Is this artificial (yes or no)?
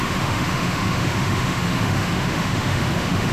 yes